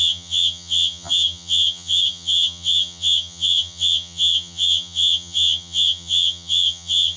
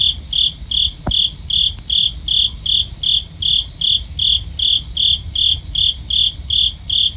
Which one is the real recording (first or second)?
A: second